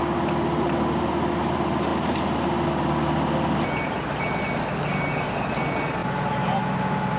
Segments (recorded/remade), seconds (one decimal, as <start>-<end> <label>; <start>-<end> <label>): 0.0-7.2 recorded